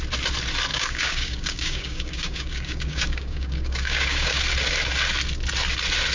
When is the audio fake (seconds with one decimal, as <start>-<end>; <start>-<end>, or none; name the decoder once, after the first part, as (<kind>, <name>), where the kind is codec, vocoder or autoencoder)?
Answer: 0.7-4.4 (codec, DAC)